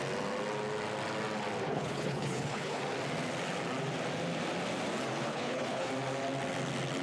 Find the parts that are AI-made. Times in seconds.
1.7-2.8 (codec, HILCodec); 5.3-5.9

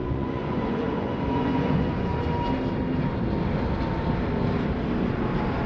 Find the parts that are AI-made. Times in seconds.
0.0-2.1 (vocoder, Vocos)

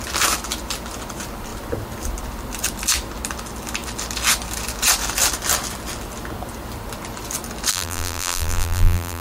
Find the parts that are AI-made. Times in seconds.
7.7-9.2 (vocoder, BigVGAN v2)

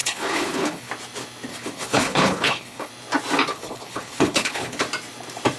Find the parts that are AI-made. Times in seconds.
0.0-0.9 (codec, HILCodec); 1.5-2.9; 3.5-4.8

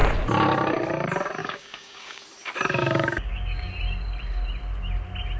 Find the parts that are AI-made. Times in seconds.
1.4-2.2 (codec, DAC); 2.8-3.7

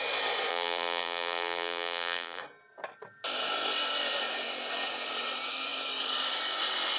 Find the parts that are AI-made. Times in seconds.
0.5-2.4 (vocoder, BigVGAN v2)